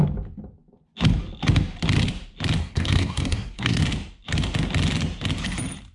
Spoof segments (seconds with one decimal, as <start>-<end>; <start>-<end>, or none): 2.6-3.8